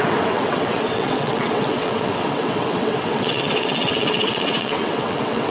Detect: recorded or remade remade